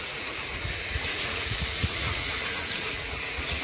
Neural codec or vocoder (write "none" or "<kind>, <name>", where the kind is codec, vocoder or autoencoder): vocoder, Vocos